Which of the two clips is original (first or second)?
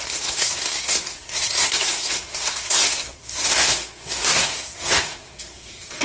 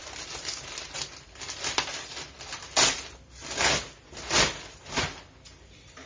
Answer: second